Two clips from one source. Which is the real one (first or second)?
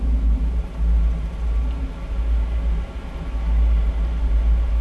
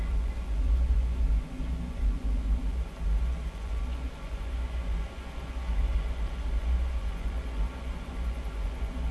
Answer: first